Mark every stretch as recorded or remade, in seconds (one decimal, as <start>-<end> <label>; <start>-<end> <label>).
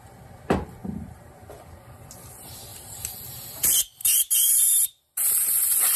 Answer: 0.0-0.8 recorded; 0.8-2.1 remade; 2.1-2.7 recorded; 2.7-3.3 remade; 3.3-4.0 recorded; 4.0-4.7 remade; 4.7-6.0 recorded